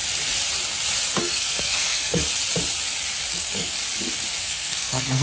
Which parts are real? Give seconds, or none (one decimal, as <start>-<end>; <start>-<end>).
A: 0.0-1.2; 2.2-3.3; 3.8-4.4